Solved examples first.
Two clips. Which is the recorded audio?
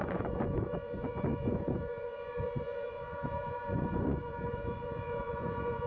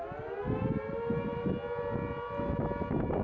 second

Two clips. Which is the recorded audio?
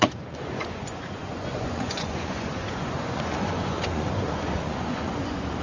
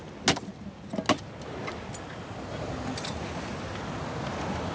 second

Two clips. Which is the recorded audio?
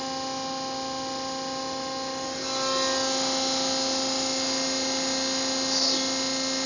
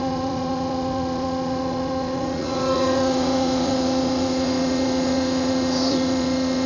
first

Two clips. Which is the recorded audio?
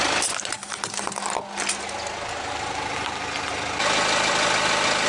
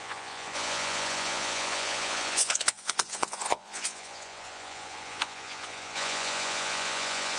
first